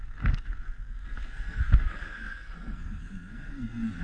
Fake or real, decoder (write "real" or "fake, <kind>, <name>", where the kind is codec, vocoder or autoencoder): fake, codec, SNAC